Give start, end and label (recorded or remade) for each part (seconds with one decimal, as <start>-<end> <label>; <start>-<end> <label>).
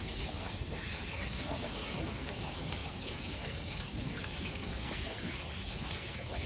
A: 0.0-6.5 remade